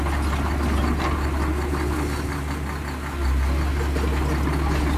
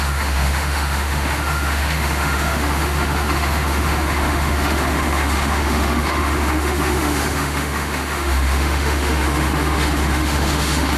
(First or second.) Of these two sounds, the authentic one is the first